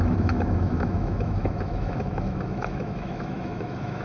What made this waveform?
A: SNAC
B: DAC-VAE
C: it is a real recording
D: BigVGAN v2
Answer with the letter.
B